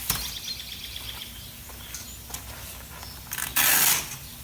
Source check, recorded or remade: recorded